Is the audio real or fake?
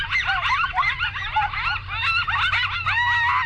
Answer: real